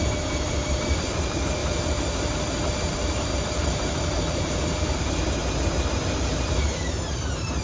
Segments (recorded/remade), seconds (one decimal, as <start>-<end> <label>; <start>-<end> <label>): 0.0-5.4 remade; 5.4-5.9 recorded; 5.9-7.6 remade